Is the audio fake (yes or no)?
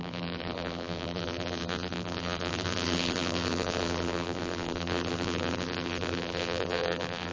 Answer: yes